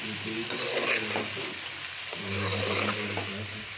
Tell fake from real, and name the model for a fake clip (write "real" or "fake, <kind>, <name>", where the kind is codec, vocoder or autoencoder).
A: real